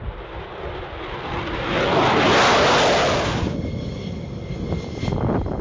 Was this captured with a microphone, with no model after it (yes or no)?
yes